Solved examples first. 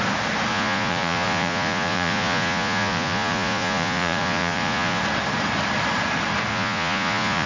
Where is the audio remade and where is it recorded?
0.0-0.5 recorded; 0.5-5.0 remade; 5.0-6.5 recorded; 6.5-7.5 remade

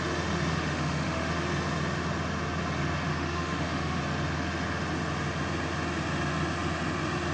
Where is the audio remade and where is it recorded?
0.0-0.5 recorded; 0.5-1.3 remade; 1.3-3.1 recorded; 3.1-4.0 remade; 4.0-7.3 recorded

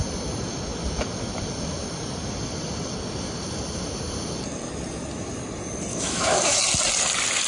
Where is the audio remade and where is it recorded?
0.0-5.9 recorded; 5.9-6.6 remade; 6.6-7.5 recorded

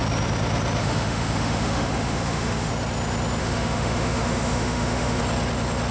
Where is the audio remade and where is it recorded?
0.0-0.8 recorded; 0.8-2.7 remade; 2.7-3.4 recorded; 3.4-5.2 remade; 5.2-5.9 recorded

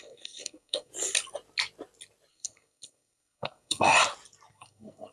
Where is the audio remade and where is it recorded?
0.0-0.9 remade; 0.9-2.3 recorded; 2.3-3.9 remade; 3.9-4.5 recorded; 4.5-5.1 remade